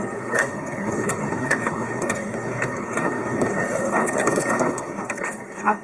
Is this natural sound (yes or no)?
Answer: no